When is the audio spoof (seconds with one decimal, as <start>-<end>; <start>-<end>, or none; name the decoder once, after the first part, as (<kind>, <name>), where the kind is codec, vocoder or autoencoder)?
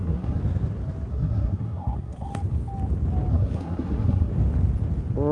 0.0-0.4 (codec, SNAC); 1.1-2.3; 3.3-4.3